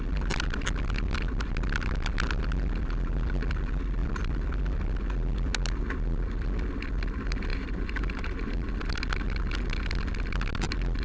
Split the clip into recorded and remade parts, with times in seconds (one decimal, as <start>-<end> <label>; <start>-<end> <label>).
0.0-7.5 recorded; 7.5-8.7 remade; 8.7-11.0 recorded